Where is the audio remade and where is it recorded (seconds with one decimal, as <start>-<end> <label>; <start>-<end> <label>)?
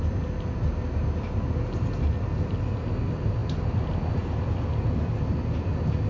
0.0-6.1 recorded